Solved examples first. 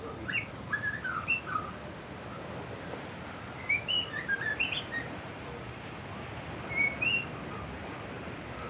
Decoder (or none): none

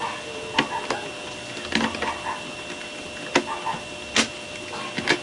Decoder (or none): none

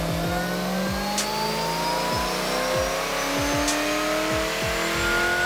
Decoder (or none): none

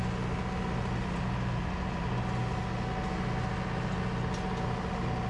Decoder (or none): none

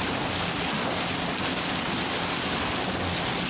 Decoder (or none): none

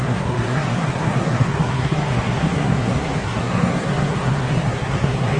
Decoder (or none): codec, SNAC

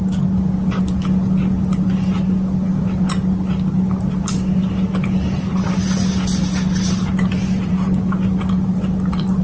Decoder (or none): none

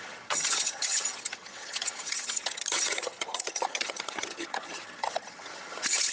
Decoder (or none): vocoder, HiFi-GAN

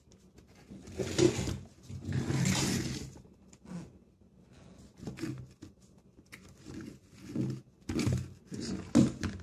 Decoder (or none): none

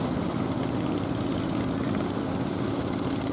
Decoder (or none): none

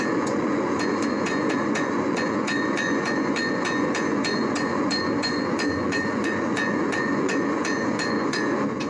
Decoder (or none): vocoder, Vocos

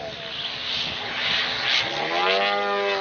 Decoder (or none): none